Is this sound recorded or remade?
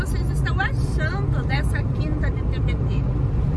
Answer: recorded